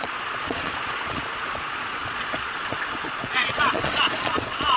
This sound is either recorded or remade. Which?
remade